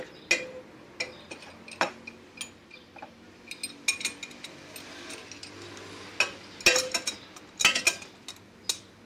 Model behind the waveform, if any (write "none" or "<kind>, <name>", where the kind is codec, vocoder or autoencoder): none